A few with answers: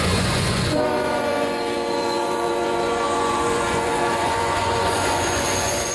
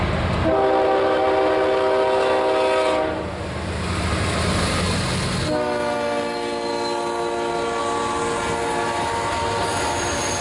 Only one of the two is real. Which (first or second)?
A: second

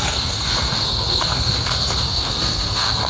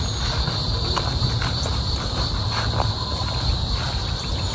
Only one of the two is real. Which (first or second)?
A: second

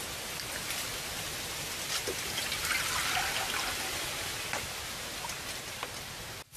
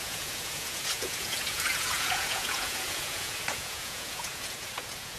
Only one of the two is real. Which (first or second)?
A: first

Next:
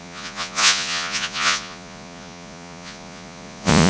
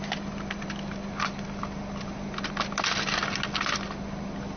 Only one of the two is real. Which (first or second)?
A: second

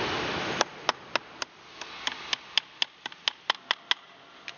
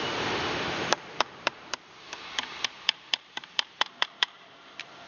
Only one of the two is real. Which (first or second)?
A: first